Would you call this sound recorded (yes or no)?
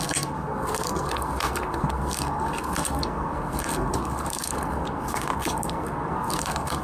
no